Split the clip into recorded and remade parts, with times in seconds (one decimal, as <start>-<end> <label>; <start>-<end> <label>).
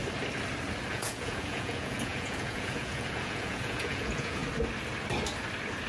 0.0-0.9 recorded; 0.9-4.4 remade; 4.4-5.9 recorded